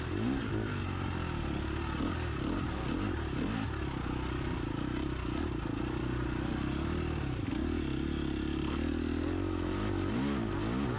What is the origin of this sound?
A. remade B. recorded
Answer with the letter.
B